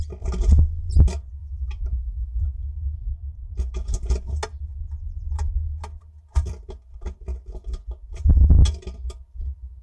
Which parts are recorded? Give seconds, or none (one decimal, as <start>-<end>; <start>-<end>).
0.0-1.4; 2.4-9.8